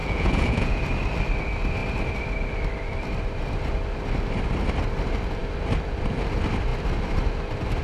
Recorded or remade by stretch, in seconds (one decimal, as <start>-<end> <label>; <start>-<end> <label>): 0.0-0.8 remade; 0.8-7.8 recorded